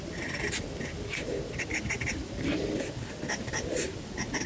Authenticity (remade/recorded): remade